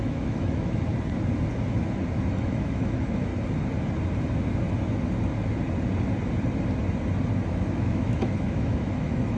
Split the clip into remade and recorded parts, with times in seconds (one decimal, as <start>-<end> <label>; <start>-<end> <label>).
0.0-0.9 remade; 0.9-2.3 recorded; 2.3-3.3 remade; 3.3-7.5 recorded; 7.5-9.4 remade